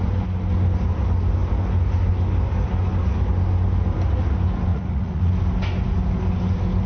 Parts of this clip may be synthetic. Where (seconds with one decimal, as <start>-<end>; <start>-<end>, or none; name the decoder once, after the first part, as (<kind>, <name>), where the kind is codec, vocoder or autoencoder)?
4.7-5.3 (vocoder, Vocos)

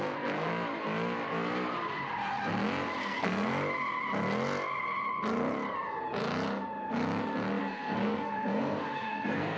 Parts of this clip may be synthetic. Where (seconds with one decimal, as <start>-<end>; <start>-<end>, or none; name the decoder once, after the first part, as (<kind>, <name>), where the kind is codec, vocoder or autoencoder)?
0.0-0.5 (codec, SNAC); 3.0-3.5; 7.6-9.6

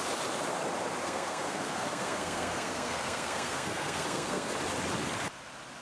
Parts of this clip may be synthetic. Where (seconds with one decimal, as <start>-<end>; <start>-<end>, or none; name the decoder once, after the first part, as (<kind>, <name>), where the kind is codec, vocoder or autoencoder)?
1.0-4.5 (codec, SNAC)